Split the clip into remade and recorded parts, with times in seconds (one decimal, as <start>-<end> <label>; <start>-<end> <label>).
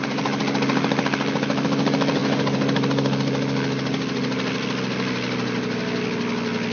0.0-6.7 recorded